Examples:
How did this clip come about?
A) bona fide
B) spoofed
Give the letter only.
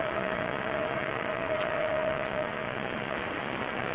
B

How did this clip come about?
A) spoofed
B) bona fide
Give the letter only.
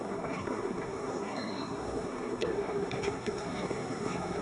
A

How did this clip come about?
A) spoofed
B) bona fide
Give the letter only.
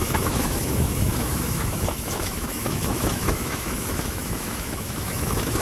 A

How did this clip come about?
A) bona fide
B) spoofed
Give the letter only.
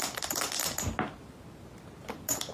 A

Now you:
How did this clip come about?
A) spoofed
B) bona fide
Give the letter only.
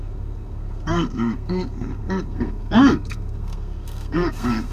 A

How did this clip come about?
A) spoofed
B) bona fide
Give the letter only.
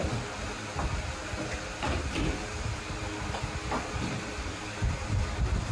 B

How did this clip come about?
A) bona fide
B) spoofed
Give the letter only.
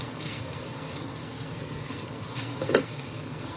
B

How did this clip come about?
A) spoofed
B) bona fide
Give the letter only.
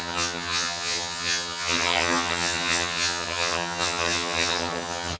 A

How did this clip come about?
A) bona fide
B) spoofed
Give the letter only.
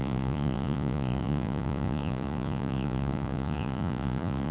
B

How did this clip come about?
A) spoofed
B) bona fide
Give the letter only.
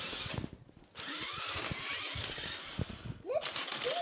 B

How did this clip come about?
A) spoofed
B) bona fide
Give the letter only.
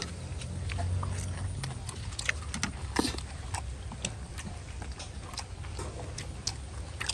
B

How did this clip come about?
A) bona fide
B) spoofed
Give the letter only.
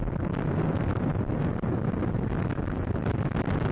A